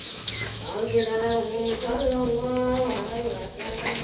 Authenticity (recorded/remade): remade